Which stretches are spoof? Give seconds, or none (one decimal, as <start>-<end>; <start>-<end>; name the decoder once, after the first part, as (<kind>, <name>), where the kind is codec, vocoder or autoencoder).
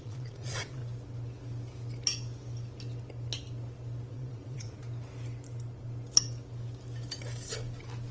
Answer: 0.0-0.8 (vocoder, Vocos); 4.1-4.8